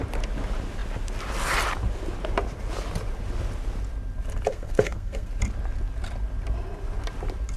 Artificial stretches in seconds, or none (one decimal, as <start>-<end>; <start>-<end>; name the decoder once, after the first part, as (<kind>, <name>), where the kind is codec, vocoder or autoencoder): 4.5-5.3 (codec, SNAC)